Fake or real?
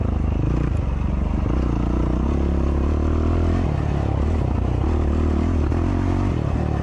real